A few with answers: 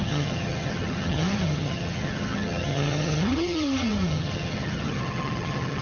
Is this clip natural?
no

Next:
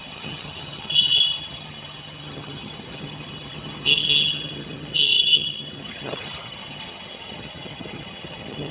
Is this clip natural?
no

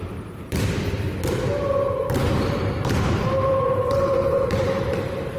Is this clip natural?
no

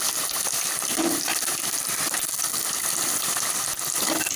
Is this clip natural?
yes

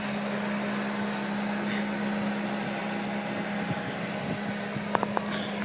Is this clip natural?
yes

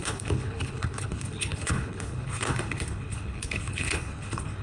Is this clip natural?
no